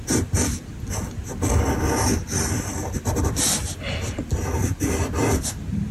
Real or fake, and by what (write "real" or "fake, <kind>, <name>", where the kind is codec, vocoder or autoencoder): real